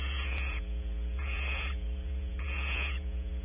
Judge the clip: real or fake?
fake